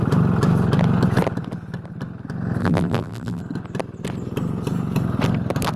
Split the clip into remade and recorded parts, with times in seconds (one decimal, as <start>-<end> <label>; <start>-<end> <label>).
0.0-2.6 recorded; 2.6-3.4 remade; 3.4-5.8 recorded